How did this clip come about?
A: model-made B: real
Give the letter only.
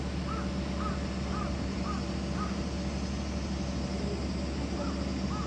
B